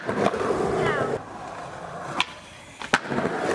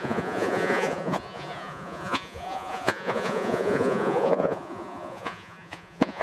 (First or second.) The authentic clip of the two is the first